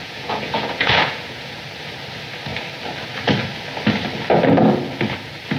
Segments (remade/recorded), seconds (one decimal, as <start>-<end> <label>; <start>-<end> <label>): 0.0-1.6 remade; 1.6-5.6 recorded